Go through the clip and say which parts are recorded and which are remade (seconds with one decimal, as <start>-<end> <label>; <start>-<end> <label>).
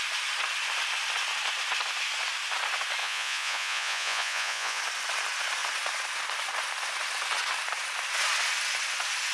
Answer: 0.0-3.0 recorded; 3.0-4.8 remade; 4.8-9.3 recorded